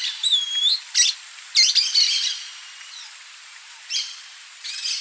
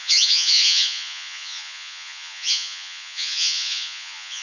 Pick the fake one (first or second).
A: second